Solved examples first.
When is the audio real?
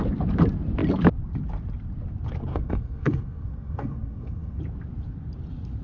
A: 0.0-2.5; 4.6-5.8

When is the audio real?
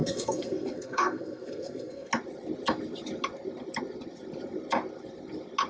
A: 2.1-5.7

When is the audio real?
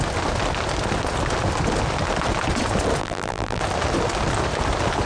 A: 0.0-3.0; 3.6-5.1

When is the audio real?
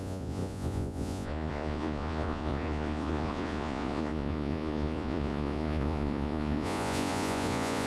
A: none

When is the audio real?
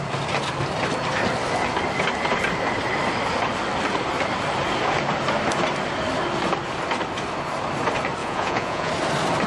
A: 0.0-8.2; 8.9-9.5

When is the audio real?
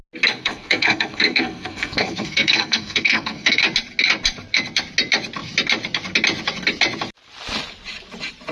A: 0.0-0.4; 3.6-8.5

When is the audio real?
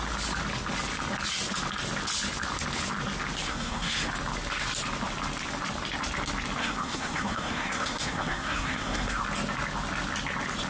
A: 0.0-3.5; 4.1-6.6; 9.2-10.7